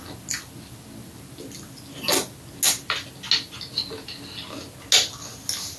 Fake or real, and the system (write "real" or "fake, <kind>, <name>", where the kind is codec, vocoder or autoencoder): real